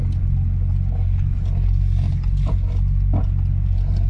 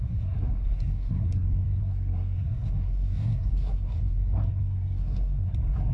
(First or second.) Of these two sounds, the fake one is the second